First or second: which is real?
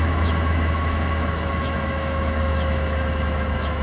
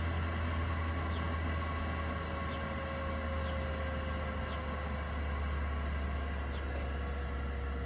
second